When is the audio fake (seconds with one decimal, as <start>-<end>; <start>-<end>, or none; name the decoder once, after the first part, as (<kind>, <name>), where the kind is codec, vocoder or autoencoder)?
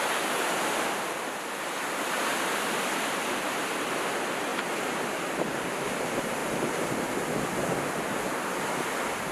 none